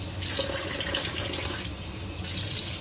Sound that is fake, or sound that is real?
fake